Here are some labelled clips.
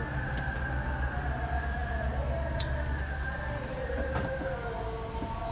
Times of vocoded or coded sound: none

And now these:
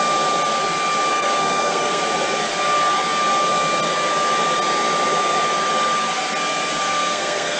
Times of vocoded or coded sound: 1.1-2.0; 6.8-7.6

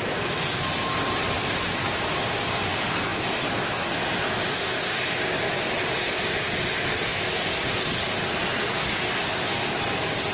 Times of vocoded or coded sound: none

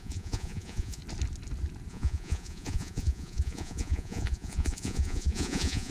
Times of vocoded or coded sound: 0.0-1.0; 1.9-5.9

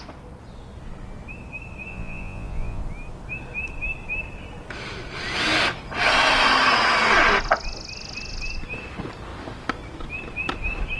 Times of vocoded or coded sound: 1.9-2.8